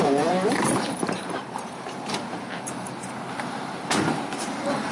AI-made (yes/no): yes